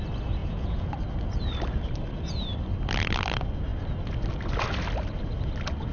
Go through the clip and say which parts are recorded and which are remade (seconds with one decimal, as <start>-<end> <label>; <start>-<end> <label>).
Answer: 0.0-0.4 recorded; 0.4-0.9 remade; 0.9-5.9 recorded